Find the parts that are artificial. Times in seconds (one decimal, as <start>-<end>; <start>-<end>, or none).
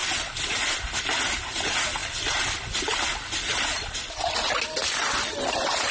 none